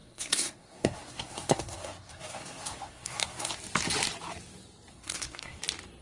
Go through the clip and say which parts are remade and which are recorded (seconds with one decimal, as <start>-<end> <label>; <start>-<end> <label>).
0.0-3.5 remade; 3.5-4.9 recorded; 4.9-5.6 remade; 5.6-6.0 recorded